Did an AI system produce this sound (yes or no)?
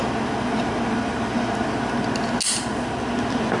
no